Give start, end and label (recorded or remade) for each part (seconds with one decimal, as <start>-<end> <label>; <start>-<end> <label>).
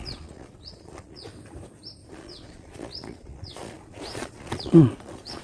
0.0-1.3 remade; 1.3-2.1 recorded; 2.1-5.4 remade